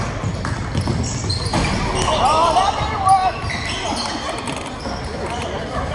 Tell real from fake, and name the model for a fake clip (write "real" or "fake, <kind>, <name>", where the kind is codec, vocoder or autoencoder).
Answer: real